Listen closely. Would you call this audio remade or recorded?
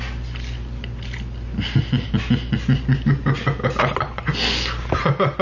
recorded